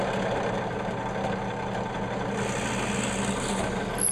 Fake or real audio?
real